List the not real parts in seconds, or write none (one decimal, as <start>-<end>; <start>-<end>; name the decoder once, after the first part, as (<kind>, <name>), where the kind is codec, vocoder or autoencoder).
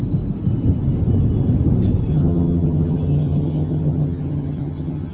2.1-5.1 (vocoder, HiFi-GAN)